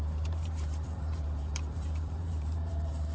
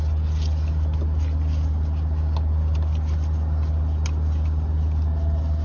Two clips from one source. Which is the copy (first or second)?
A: first